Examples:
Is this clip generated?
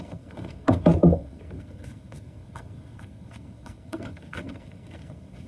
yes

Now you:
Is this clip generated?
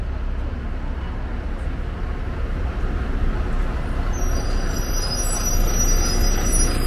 no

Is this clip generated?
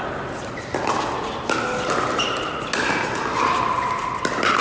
no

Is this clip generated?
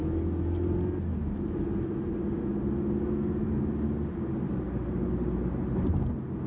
no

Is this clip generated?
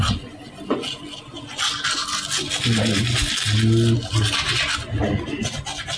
no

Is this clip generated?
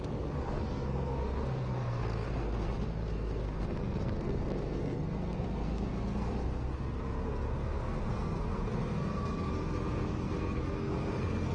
yes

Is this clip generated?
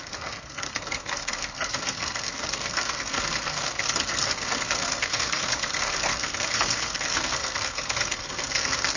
yes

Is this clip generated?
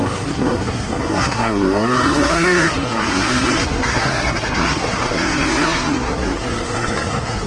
yes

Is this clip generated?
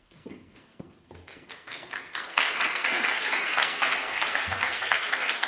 yes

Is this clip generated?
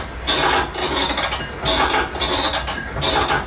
no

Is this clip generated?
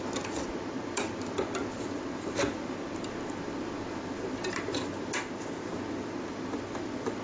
no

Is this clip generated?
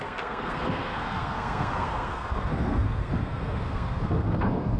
yes